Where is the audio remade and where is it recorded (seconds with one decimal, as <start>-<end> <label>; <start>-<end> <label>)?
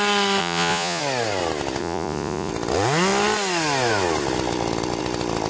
0.0-0.4 recorded; 0.4-1.0 remade; 1.0-1.8 recorded; 1.8-2.5 remade; 2.5-5.5 recorded